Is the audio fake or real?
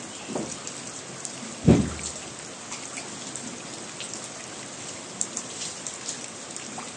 real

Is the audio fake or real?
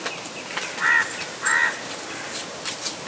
real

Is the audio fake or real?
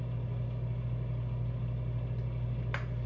real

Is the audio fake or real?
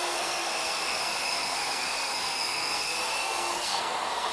fake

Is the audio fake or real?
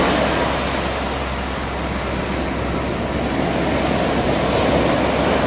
real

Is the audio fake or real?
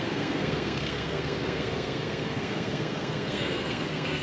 fake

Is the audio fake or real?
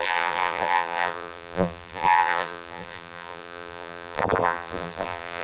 fake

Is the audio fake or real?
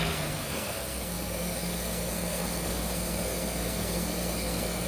fake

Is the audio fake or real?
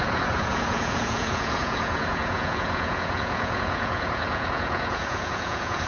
fake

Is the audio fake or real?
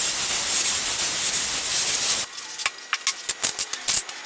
real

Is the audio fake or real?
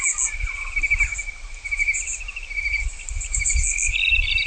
real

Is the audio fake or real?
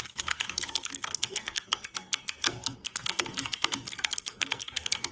fake